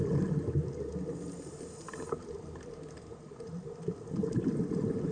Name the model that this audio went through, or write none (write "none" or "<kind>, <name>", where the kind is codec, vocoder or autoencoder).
none